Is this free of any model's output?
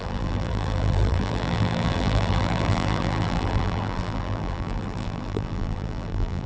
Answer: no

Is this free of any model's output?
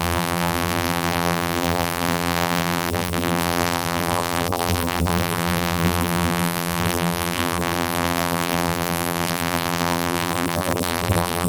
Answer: no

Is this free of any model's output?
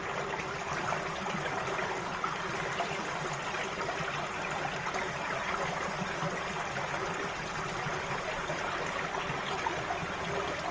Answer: yes